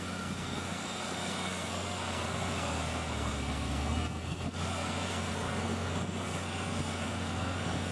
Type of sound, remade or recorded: remade